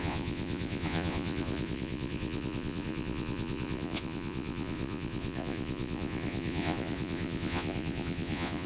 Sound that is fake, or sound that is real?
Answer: fake